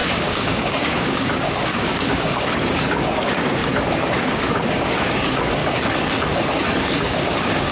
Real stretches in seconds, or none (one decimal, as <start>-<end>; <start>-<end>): 3.6-4.2; 5.6-6.8